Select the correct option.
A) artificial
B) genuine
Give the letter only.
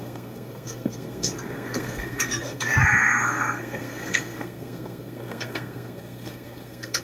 A